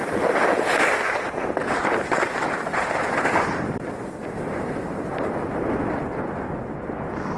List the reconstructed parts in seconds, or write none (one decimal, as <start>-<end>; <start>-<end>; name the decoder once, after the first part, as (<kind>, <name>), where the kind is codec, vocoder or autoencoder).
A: 0.0-1.0 (vocoder, BigVGAN v2); 1.6-5.5